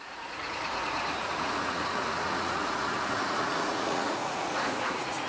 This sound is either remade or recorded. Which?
remade